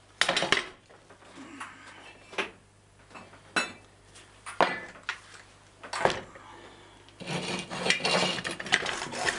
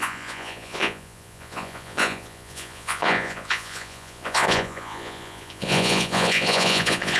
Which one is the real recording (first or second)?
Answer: first